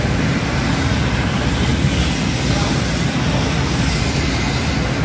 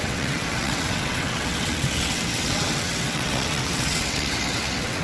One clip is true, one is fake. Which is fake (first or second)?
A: second